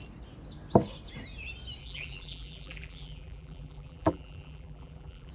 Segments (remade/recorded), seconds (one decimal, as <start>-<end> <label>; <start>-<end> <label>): 0.0-1.8 recorded; 1.8-5.3 remade